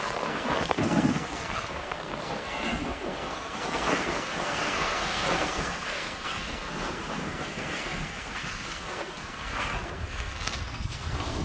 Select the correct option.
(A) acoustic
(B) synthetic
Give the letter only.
B